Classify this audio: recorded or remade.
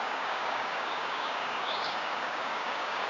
remade